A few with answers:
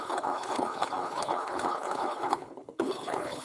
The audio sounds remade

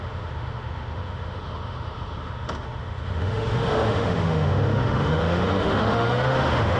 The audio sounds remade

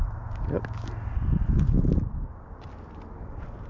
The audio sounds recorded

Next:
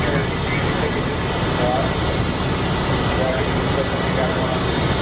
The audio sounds recorded